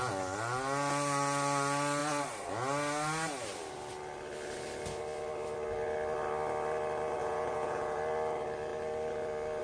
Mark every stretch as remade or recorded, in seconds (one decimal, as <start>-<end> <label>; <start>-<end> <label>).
0.0-7.2 recorded; 7.2-8.0 remade; 8.0-9.6 recorded